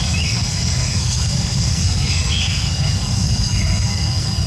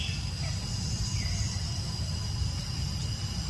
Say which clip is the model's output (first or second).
first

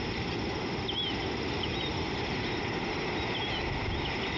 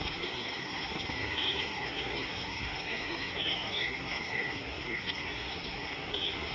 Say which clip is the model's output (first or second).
second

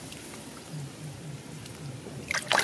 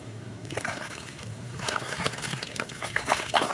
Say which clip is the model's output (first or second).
second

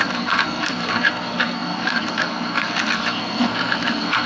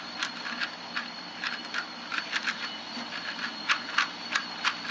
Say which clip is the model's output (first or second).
first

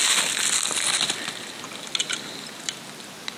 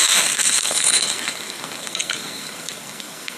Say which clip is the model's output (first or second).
second